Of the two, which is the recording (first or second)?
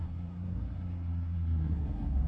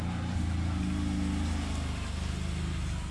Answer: second